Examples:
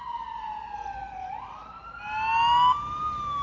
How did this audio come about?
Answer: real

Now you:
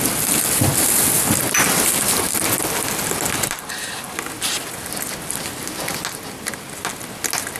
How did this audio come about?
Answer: real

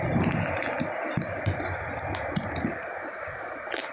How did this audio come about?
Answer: real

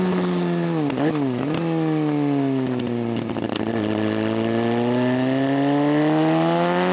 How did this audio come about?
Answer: real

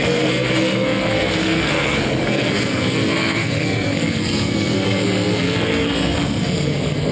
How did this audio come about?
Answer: fake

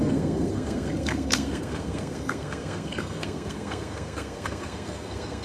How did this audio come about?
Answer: fake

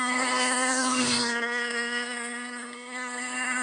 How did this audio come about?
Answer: fake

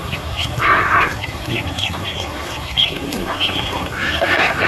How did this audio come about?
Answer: fake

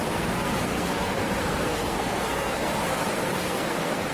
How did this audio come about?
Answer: fake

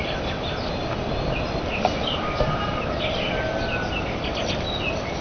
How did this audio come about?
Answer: real